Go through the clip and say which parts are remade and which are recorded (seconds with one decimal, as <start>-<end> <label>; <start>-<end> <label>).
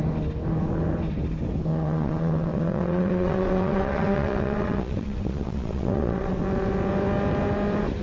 0.0-1.7 recorded; 1.7-6.4 remade; 6.4-8.0 recorded